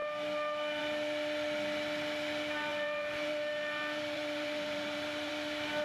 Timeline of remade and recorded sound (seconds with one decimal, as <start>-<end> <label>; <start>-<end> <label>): 0.0-2.7 recorded; 2.7-5.3 remade; 5.3-5.8 recorded